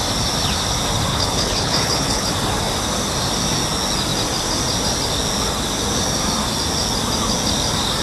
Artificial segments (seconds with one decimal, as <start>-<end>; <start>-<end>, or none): 1.1-2.3